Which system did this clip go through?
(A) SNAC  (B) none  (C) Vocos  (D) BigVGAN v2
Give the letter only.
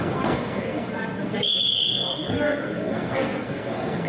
A